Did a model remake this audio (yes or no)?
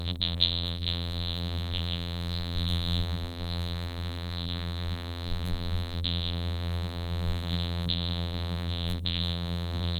yes